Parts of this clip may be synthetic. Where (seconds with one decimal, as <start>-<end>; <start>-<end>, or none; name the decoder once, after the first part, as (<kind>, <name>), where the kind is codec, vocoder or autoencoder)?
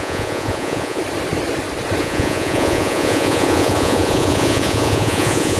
0.0-1.0 (vocoder, Vocos); 2.0-5.6